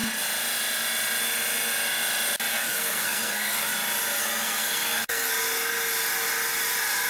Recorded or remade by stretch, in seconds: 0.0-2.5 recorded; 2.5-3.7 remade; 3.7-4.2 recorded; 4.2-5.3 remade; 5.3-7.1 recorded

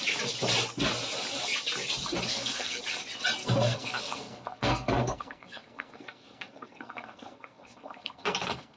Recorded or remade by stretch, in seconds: 0.0-2.3 recorded; 2.3-2.8 remade; 2.8-3.4 recorded; 3.4-8.8 remade

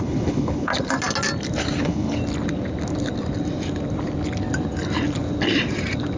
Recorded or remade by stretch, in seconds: 0.0-0.7 remade; 0.7-1.8 recorded; 1.8-2.2 remade; 2.2-6.2 recorded

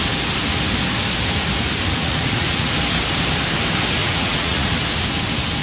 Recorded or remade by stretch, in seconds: 0.0-2.0 recorded; 2.0-2.7 remade; 2.7-4.0 recorded; 4.0-4.7 remade; 4.7-5.6 recorded

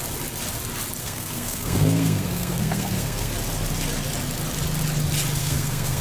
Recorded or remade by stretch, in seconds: 0.0-1.0 recorded; 1.0-3.3 remade; 3.3-5.4 recorded; 5.4-6.0 remade

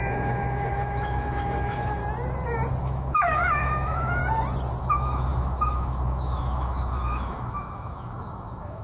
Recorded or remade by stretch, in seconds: 0.0-2.0 remade; 2.0-2.8 recorded; 2.8-4.2 remade; 4.2-4.8 recorded; 4.8-8.8 remade